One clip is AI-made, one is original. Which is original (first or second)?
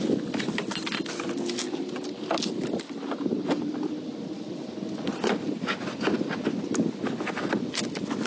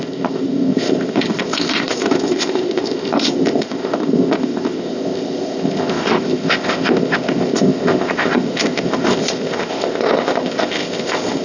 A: first